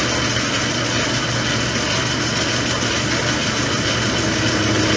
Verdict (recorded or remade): recorded